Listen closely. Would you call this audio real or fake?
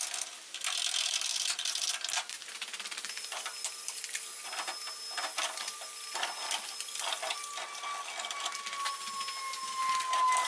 real